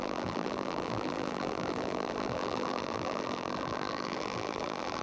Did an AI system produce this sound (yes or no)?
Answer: yes